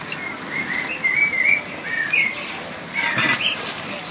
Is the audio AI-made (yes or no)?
no